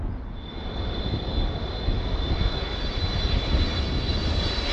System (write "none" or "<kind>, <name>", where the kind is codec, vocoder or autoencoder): none